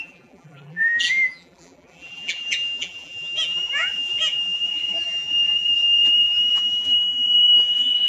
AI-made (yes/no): yes